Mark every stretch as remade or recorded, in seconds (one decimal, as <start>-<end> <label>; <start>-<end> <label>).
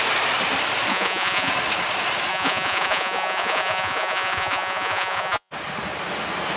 0.0-0.9 recorded; 0.9-1.5 remade; 1.5-2.3 recorded; 2.3-5.5 remade; 5.5-6.6 recorded